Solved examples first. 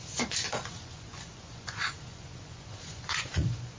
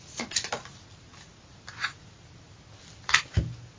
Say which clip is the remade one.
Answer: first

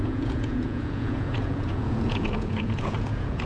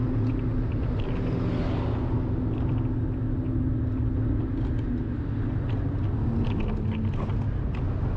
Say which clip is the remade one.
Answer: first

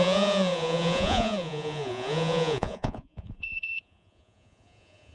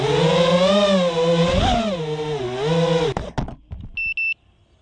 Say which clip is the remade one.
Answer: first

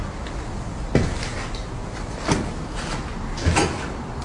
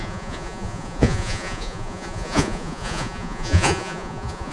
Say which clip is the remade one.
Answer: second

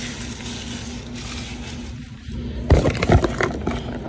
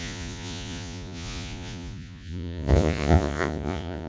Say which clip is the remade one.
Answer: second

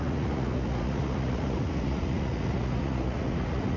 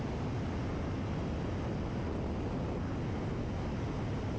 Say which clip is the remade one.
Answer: first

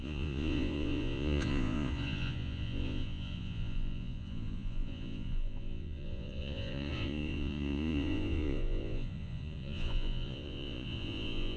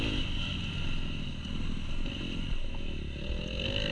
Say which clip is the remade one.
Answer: first